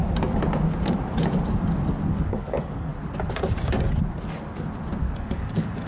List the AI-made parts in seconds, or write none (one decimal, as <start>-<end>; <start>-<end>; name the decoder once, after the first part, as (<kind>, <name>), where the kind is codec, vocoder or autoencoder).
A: 2.1-2.9 (codec, DAC); 5.0-5.9